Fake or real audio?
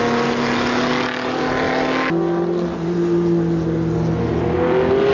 real